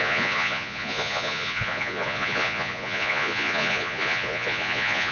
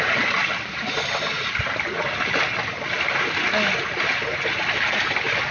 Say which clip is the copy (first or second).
first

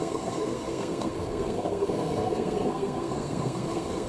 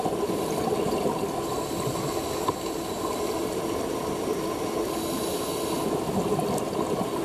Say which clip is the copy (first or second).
first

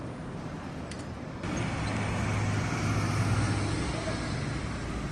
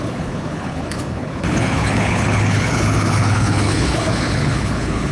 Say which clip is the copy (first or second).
second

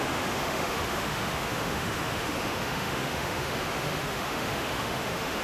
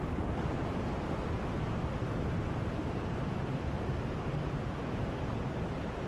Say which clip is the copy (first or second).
first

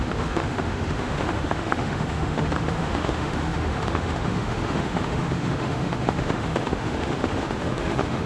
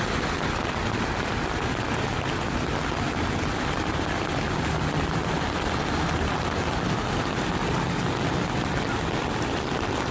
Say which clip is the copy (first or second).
first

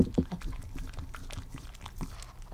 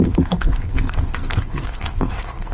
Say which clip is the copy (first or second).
second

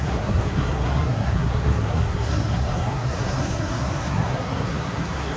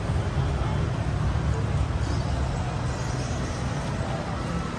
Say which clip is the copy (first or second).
first